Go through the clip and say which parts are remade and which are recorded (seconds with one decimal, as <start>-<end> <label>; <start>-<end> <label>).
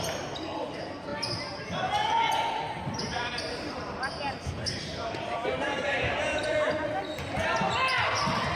0.0-1.1 recorded; 1.1-1.7 remade; 1.7-3.1 recorded; 3.1-6.5 remade; 6.5-8.6 recorded